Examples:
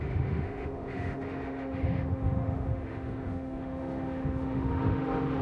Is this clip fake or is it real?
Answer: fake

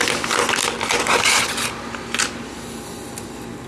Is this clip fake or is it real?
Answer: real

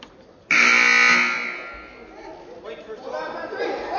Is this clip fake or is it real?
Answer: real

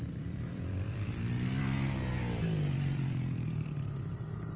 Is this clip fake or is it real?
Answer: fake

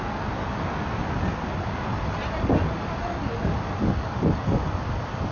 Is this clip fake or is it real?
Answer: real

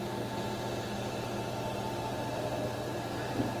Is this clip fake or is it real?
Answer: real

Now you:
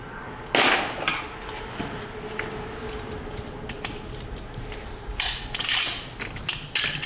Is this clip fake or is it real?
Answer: real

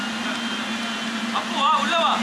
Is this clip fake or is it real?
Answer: real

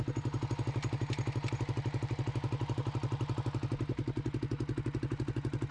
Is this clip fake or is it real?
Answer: real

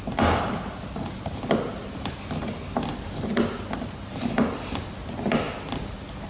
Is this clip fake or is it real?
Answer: real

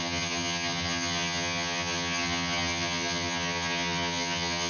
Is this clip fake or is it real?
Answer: fake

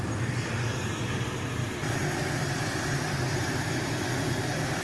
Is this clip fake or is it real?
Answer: real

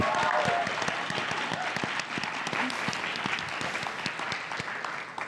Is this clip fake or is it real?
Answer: real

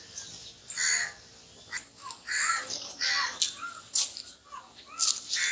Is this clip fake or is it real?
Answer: real